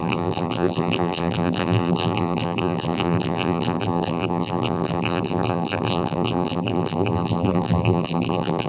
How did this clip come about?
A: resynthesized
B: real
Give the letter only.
A